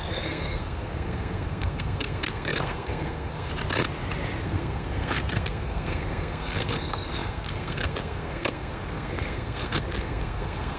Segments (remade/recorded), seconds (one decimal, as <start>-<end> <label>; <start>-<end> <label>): 0.0-3.5 remade; 3.5-4.4 recorded; 4.4-10.8 remade